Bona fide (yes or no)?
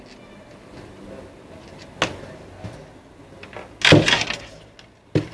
yes